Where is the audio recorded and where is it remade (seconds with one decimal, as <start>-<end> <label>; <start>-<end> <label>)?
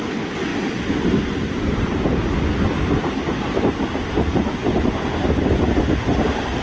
0.0-0.5 recorded; 0.5-1.8 remade; 1.8-6.6 recorded